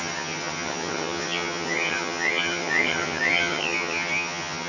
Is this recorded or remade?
remade